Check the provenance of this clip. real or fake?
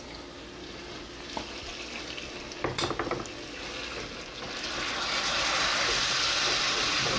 real